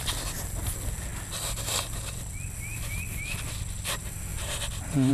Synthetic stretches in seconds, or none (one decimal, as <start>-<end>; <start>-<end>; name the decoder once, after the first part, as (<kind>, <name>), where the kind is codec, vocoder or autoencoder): none